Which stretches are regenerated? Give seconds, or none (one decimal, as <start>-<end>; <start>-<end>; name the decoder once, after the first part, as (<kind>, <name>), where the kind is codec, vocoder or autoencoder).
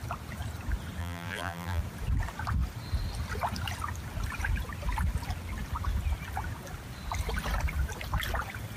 1.0-1.8 (vocoder, BigVGAN v2)